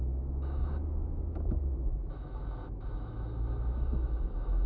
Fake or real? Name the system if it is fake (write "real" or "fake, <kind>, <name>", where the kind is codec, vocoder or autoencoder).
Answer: fake, autoencoder, DAC-VAE